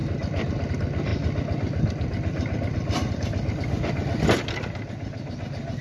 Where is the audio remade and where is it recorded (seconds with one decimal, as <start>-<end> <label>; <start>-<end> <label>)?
0.0-5.8 recorded